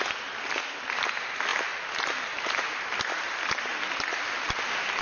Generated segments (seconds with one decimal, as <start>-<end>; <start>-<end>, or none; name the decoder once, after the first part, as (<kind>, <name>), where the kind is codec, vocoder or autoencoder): none